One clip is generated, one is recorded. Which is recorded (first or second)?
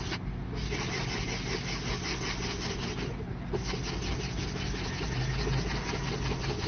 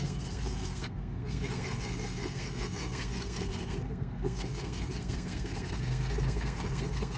first